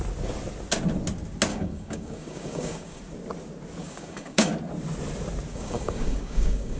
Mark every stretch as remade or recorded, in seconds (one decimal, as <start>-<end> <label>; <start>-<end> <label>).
0.0-1.5 recorded; 1.5-3.0 remade; 3.0-3.8 recorded; 3.8-4.5 remade; 4.5-5.5 recorded; 5.5-6.8 remade

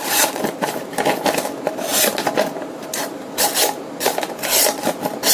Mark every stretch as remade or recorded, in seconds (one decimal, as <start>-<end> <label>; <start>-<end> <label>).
0.0-5.3 recorded

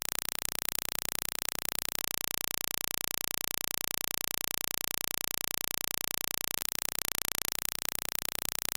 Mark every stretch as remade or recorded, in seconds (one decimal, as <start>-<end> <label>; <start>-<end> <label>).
0.0-2.0 remade; 2.0-6.6 recorded; 6.6-7.0 remade; 7.0-7.5 recorded; 7.5-8.8 remade

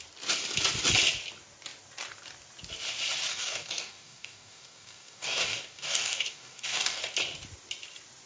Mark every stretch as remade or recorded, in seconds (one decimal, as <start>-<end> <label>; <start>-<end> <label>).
0.0-3.3 recorded; 3.3-7.0 remade; 7.0-8.3 recorded

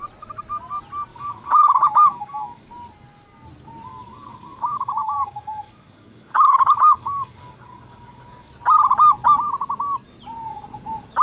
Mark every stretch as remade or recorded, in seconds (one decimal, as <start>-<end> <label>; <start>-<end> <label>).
0.0-1.1 recorded; 1.1-2.7 remade; 2.7-3.9 recorded; 3.9-8.5 remade; 8.5-11.2 recorded

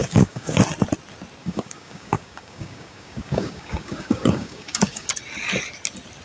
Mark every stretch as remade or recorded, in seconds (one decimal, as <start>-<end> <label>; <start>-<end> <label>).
0.0-0.6 remade; 0.6-1.4 recorded; 1.4-5.1 remade; 5.1-6.2 recorded